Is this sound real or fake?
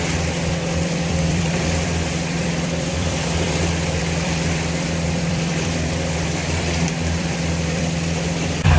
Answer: fake